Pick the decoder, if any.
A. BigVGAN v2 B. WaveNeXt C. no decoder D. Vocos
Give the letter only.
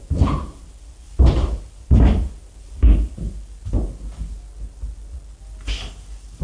C